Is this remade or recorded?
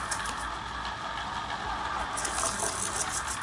recorded